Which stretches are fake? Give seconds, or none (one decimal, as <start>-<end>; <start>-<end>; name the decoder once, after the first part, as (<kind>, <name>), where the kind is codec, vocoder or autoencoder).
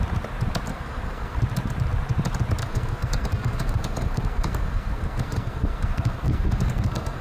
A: 0.7-1.4 (codec, SNAC); 2.6-7.2